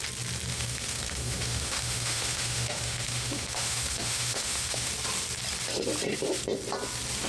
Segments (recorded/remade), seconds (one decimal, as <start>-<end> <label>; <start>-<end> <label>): 0.0-0.5 recorded; 0.5-4.9 remade; 4.9-7.3 recorded